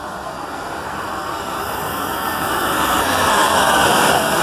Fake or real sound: fake